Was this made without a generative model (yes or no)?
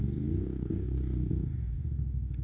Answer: no